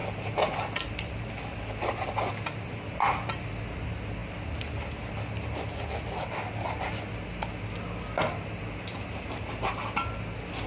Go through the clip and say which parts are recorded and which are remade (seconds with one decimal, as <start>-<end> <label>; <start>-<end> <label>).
0.0-10.7 recorded